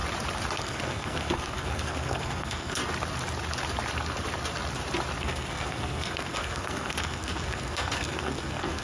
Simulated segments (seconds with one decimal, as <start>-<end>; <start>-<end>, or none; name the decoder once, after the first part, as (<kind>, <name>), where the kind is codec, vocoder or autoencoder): 0.6-2.8 (codec, SNAC); 5.2-8.8